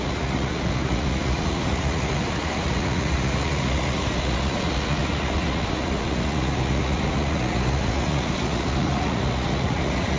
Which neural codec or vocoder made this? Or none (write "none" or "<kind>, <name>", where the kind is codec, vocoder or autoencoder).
vocoder, Vocos